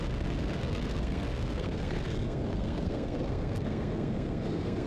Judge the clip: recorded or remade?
remade